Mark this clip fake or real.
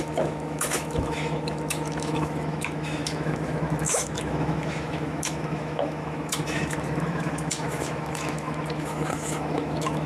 fake